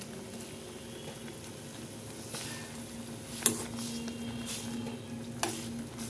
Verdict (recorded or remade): recorded